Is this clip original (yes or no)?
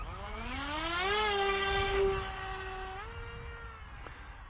yes